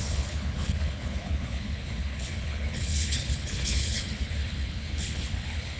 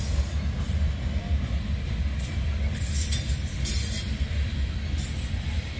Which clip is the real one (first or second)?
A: second